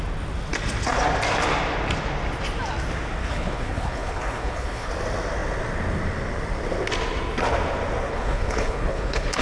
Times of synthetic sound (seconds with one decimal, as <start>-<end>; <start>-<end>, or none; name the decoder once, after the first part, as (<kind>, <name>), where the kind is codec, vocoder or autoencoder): 3.2-4.9 (codec, HILCodec); 8.1-9.4